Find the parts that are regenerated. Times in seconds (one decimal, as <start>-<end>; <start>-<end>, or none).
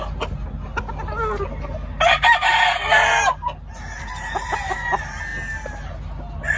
none